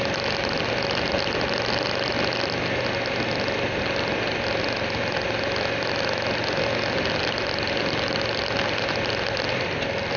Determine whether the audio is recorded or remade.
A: recorded